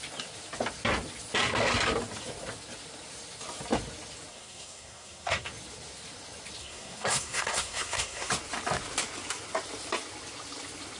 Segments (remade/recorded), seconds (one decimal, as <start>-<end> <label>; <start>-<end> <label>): 0.0-4.3 recorded; 4.3-5.5 remade; 5.5-6.6 recorded; 6.6-8.3 remade; 8.3-11.0 recorded